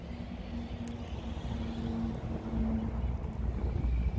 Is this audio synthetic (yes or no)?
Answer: no